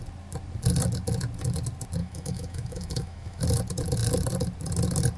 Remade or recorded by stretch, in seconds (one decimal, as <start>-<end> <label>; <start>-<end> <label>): 0.0-2.0 recorded; 2.0-3.4 remade; 3.4-5.2 recorded